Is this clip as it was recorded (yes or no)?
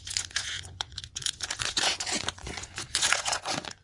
no